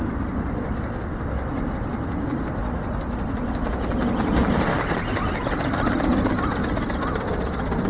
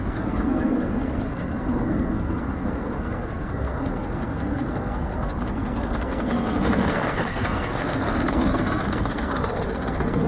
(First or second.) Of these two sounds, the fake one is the second